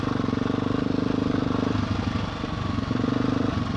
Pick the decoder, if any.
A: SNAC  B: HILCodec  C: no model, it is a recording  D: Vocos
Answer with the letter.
C